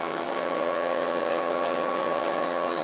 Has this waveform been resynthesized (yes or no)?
yes